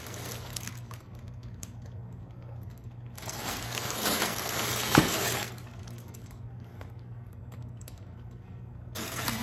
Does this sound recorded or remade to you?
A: remade